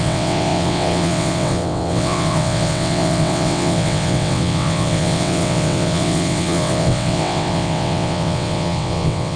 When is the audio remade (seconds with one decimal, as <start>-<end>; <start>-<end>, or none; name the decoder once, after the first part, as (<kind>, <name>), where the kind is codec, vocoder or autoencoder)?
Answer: 0.0-9.4 (vocoder, WaveNeXt)